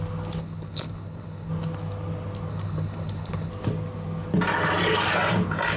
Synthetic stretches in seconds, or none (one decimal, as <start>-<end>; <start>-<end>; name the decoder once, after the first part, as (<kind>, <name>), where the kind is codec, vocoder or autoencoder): 0.4-1.5 (codec, HILCodec); 2.5-3.5